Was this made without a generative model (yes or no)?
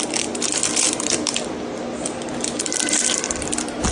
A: yes